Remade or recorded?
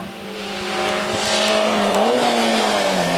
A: recorded